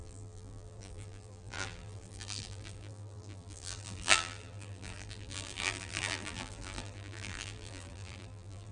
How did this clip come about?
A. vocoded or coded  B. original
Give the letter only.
A